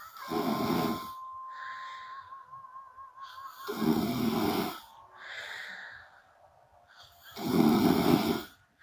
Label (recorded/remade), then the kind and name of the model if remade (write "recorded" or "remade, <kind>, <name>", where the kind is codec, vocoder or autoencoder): recorded